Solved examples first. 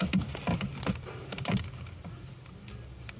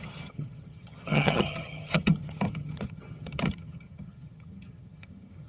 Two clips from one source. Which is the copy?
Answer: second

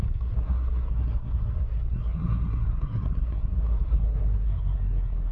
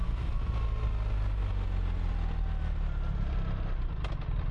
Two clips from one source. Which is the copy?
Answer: first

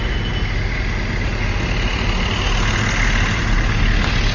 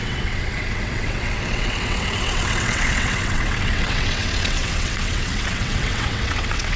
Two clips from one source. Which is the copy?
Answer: second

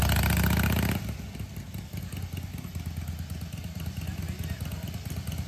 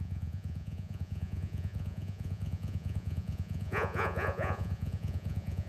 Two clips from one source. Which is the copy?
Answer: second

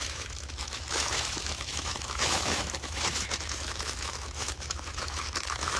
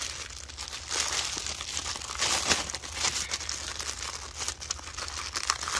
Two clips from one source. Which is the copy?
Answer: first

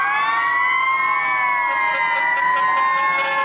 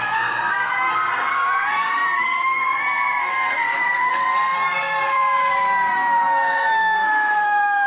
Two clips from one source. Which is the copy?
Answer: second